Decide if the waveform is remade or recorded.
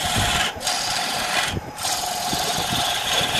remade